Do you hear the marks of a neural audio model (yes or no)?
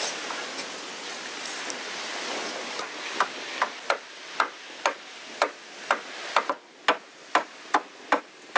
no